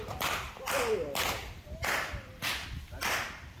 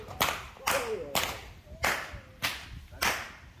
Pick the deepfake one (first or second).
first